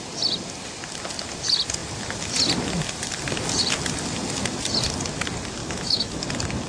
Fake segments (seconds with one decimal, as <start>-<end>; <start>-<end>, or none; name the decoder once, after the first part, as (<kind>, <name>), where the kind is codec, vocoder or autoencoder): 5.6-6.2 (autoencoder, DAC-VAE)